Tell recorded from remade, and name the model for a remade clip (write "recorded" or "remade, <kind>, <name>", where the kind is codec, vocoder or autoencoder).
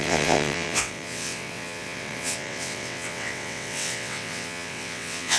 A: remade, vocoder, WaveNeXt